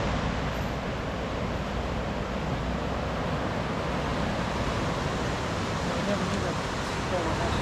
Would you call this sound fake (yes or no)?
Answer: no